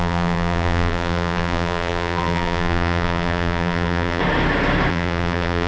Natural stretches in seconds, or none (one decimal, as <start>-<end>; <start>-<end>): 4.2-4.9